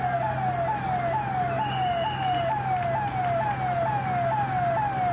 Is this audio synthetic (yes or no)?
no